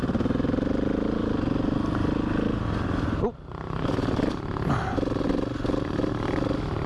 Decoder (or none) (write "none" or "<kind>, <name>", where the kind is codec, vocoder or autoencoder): none